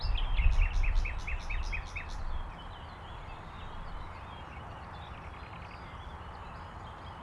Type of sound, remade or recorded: recorded